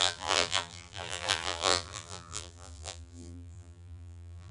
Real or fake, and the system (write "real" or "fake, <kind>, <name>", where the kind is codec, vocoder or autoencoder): fake, vocoder, BigVGAN v2